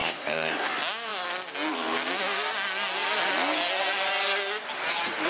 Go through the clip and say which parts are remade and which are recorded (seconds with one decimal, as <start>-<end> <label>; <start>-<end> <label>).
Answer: 0.0-0.7 remade; 0.7-5.3 recorded

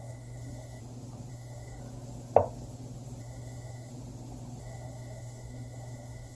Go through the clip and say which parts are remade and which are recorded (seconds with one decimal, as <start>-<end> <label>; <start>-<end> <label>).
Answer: 0.0-0.8 remade; 0.8-1.3 recorded; 1.3-1.8 remade; 1.8-3.2 recorded; 3.2-3.9 remade; 3.9-4.6 recorded; 4.6-6.3 remade